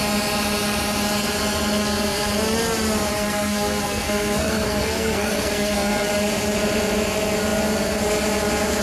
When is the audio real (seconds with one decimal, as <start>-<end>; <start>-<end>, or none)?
0.0-1.8; 2.3-3.1; 6.1-8.8